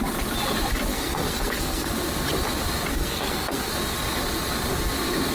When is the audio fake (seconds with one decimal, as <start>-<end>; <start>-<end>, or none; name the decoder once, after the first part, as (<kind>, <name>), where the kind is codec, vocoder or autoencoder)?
0.9-1.9 (codec, SNAC); 2.9-3.7